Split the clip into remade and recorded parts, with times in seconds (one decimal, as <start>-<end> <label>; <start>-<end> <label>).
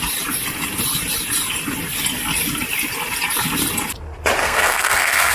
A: 0.0-4.4 recorded; 4.4-5.3 remade